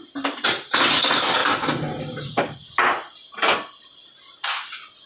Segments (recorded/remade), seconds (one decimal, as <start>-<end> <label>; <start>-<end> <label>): 0.0-5.1 recorded